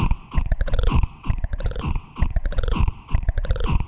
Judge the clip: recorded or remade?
remade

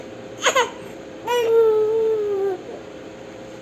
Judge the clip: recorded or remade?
remade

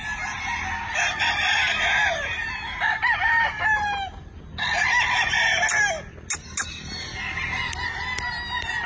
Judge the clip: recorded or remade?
recorded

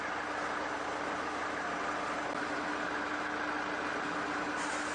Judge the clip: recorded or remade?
recorded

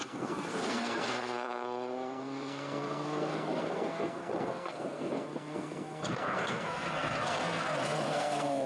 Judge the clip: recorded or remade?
remade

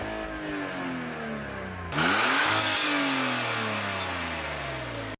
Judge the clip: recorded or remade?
recorded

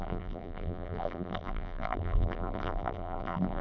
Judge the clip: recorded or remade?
remade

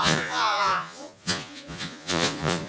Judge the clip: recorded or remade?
remade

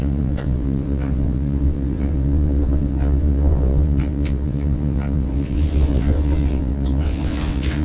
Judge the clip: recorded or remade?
remade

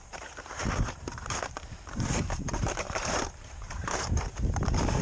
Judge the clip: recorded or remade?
remade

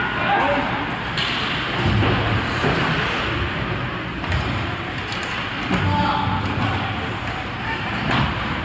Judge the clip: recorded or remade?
recorded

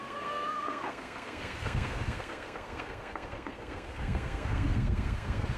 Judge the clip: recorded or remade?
remade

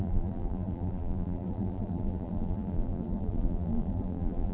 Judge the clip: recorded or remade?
remade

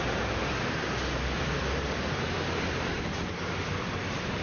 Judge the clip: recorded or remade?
remade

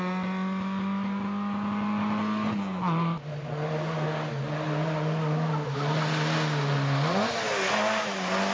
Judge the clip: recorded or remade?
recorded